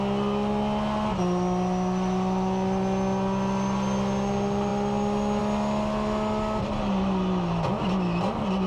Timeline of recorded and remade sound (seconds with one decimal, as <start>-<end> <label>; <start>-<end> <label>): 0.0-8.7 recorded